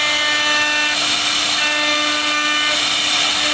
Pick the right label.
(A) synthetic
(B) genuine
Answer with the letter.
B